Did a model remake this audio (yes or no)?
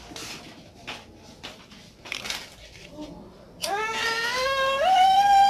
no